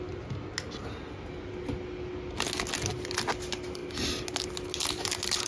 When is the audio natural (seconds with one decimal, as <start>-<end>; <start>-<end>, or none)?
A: 0.0-5.5